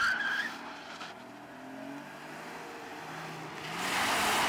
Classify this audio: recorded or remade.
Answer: recorded